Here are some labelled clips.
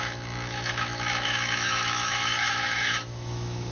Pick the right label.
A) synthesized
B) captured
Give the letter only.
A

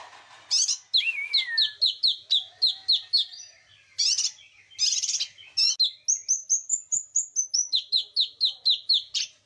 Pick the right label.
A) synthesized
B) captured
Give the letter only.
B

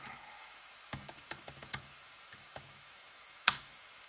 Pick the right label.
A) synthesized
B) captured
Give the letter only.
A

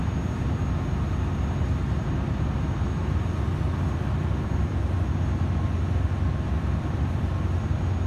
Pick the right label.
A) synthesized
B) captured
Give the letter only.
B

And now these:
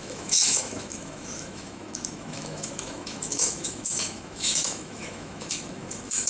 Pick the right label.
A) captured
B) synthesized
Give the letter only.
B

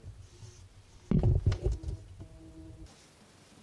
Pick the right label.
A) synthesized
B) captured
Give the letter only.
B